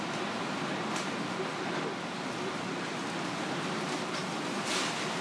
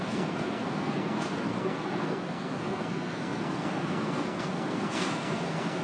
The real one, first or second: first